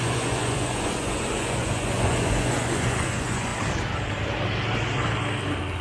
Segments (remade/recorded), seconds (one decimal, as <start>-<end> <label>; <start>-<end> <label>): 0.0-3.5 remade; 3.5-5.8 recorded